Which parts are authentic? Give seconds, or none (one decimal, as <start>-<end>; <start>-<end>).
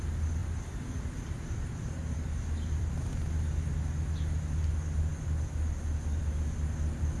0.0-0.4; 3.1-7.2